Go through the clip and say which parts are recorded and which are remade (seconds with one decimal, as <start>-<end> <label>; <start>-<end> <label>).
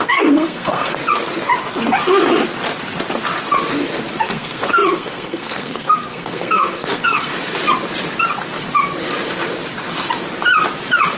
0.0-1.0 remade; 1.0-4.1 recorded; 4.1-7.3 remade; 7.3-11.2 recorded